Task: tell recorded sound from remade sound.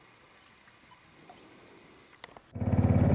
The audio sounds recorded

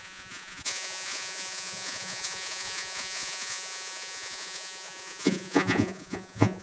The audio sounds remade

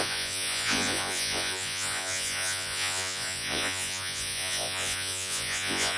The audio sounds remade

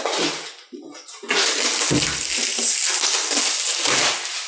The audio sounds recorded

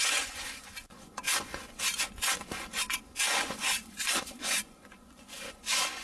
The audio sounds remade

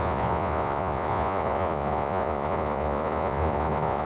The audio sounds remade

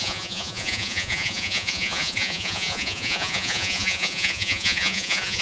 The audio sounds remade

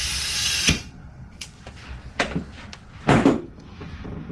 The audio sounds recorded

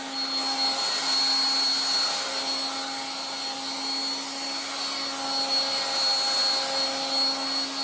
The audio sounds recorded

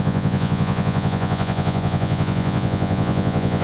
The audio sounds remade